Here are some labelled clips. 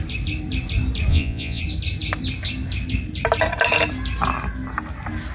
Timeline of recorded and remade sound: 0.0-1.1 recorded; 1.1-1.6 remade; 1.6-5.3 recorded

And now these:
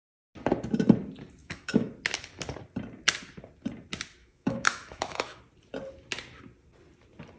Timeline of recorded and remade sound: 0.0-1.4 recorded; 1.4-1.9 remade; 1.9-4.2 recorded; 4.2-5.4 remade; 5.4-7.4 recorded

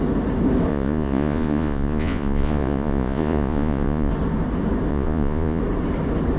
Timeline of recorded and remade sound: 0.0-0.7 recorded; 0.7-4.1 remade; 4.1-4.9 recorded; 4.9-5.6 remade; 5.6-6.4 recorded

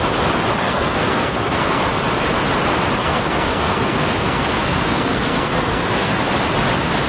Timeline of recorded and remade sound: 0.0-0.6 recorded; 0.6-1.8 remade; 1.8-3.0 recorded; 3.0-6.1 remade; 6.1-7.1 recorded

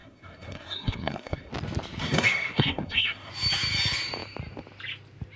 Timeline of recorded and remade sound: 0.0-1.5 remade; 1.5-2.0 recorded; 2.0-3.3 remade; 3.3-5.4 recorded

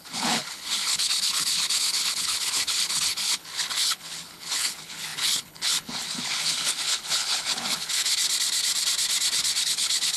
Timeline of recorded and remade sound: 0.0-8.2 remade; 8.2-9.6 recorded; 9.6-10.2 remade

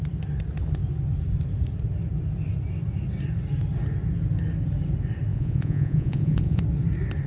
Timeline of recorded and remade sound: 0.0-5.3 recorded; 5.3-6.6 remade; 6.6-7.3 recorded

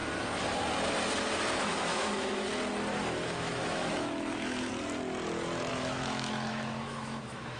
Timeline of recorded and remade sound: 0.0-1.6 recorded; 1.6-2.5 remade; 2.5-3.0 recorded; 3.0-4.7 remade; 4.7-5.7 recorded; 5.7-7.6 remade